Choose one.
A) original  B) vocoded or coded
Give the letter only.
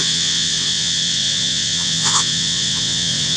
B